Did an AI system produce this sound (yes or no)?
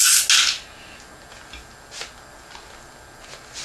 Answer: no